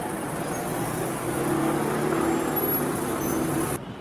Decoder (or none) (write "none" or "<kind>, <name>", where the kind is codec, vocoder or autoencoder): none